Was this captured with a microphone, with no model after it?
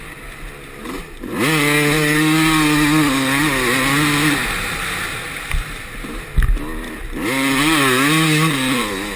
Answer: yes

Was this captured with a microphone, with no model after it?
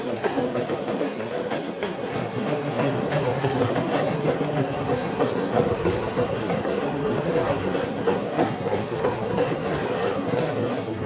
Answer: no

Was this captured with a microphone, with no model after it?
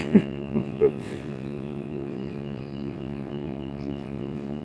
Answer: no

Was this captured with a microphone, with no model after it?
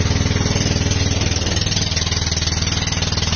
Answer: yes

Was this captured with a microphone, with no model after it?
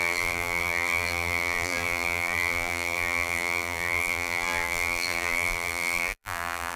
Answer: no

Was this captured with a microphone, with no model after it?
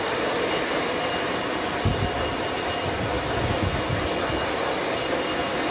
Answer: yes